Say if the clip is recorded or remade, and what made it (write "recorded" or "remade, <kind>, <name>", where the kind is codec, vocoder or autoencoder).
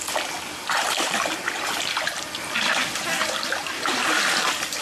recorded